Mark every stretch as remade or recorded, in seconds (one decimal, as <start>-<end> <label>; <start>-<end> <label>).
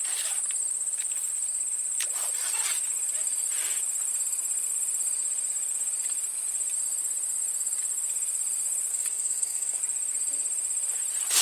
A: 0.0-8.9 recorded; 8.9-9.8 remade; 9.8-11.4 recorded